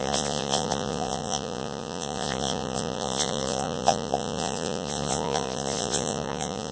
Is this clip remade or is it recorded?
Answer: remade